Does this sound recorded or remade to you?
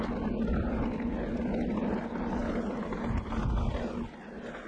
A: recorded